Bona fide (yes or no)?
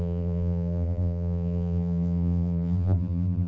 no